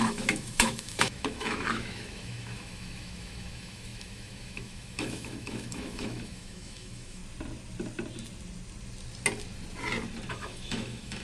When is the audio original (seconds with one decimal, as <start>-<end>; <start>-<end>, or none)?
7.2-10.3

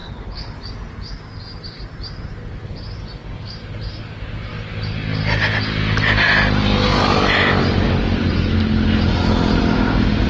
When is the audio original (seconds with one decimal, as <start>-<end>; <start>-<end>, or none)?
0.6-10.3

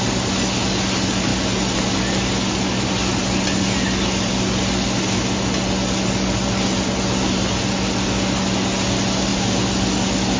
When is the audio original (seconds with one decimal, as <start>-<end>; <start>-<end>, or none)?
0.0-10.4

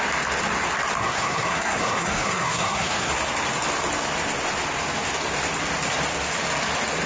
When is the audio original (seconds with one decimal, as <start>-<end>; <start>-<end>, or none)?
0.0-1.0; 3.1-7.1